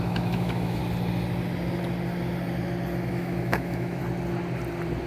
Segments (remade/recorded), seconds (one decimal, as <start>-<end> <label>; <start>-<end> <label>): 0.0-0.8 remade; 0.8-3.1 recorded; 3.1-4.0 remade; 4.0-5.1 recorded